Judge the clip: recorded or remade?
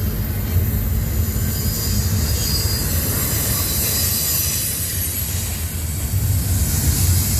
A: recorded